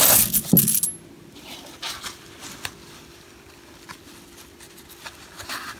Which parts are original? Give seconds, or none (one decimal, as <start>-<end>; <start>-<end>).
0.0-5.8